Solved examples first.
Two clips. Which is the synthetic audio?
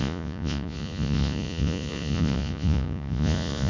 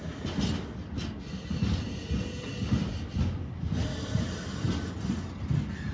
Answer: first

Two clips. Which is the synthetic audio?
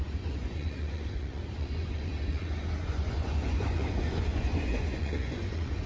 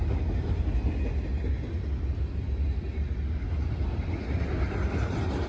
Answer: first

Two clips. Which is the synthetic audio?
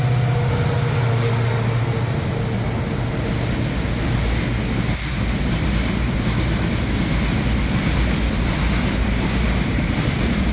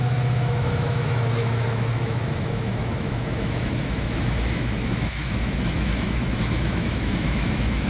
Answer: second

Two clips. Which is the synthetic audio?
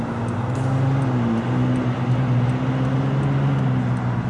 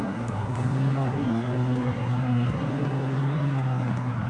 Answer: second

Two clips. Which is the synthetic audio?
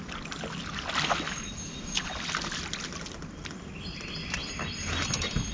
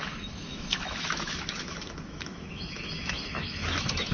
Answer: second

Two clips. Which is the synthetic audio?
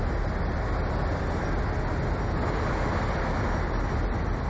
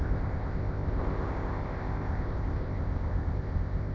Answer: second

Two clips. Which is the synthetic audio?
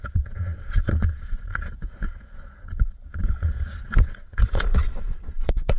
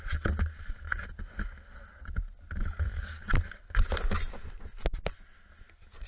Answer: first